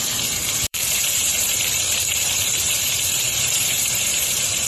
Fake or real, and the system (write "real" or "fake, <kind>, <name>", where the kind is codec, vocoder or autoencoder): fake, vocoder, BigVGAN v2